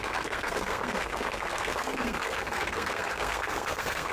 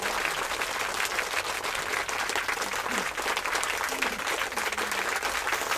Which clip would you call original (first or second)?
second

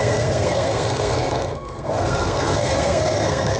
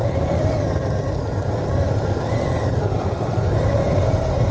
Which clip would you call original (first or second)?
second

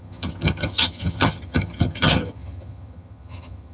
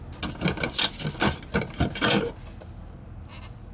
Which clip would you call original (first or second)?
second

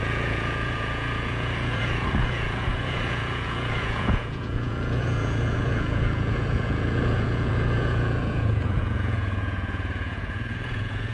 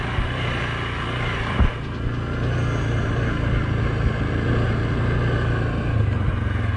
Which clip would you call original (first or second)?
second